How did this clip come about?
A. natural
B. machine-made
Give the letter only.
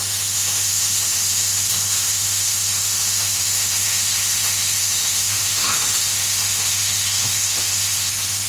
B